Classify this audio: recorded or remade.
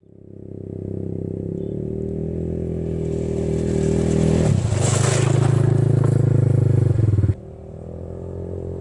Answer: recorded